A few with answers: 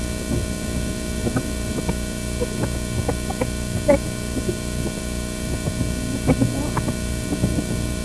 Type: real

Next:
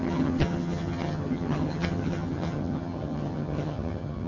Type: fake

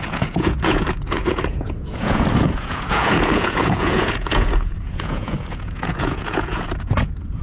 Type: fake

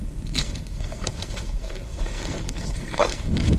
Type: fake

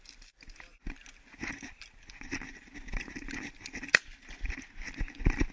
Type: real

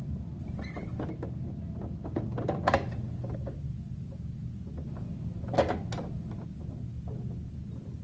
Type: real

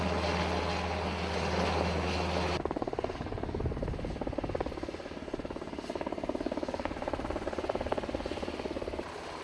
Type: real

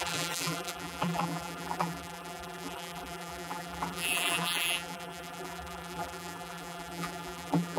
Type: fake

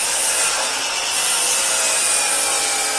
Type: real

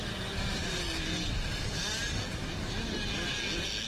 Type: real